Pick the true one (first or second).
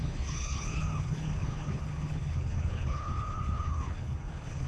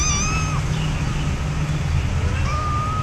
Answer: second